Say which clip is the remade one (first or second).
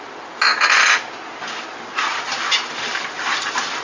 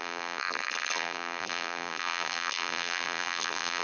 second